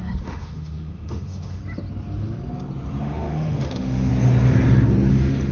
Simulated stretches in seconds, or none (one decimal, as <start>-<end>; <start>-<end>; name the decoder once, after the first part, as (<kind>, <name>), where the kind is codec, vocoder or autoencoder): 0.0-1.6 (autoencoder, DAC-VAE); 3.0-4.1; 5.1-5.5